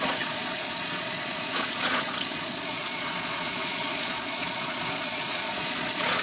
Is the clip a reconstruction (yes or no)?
yes